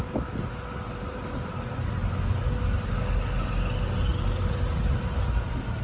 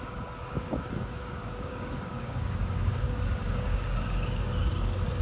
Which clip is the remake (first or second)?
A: second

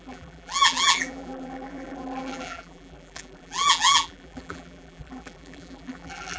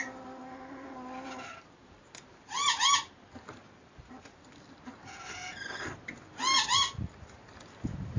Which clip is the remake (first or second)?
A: first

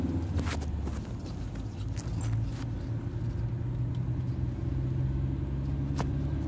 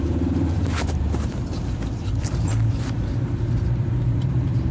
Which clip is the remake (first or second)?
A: second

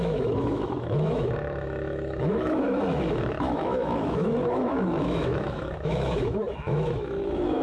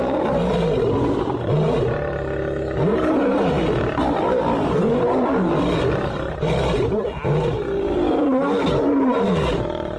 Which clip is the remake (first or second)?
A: first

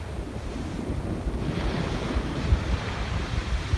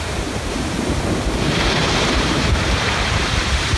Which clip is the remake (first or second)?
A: second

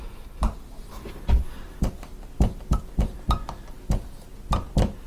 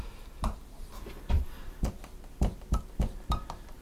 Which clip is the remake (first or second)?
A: second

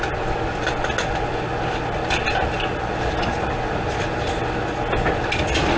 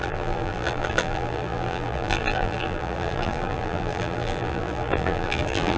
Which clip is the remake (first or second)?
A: second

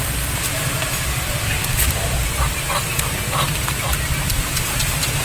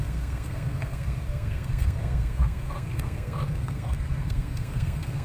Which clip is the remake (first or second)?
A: second